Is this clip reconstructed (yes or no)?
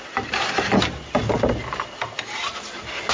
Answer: no